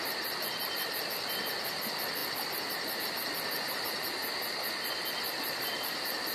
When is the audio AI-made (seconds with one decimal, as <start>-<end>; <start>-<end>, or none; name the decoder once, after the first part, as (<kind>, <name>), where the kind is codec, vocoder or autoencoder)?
none